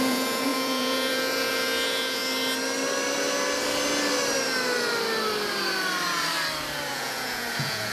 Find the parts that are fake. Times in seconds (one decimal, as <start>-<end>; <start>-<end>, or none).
0.0-2.2; 6.9-7.9